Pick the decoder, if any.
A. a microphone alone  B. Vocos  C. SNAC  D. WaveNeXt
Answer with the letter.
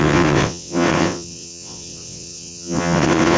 D